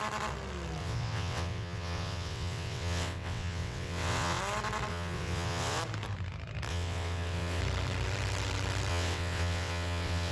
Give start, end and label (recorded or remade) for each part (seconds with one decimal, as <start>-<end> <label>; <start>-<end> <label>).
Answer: 0.0-0.8 recorded; 0.8-4.4 remade; 4.4-4.9 recorded; 4.9-5.8 remade; 5.8-6.7 recorded; 6.7-7.6 remade; 7.6-8.9 recorded; 8.9-10.3 remade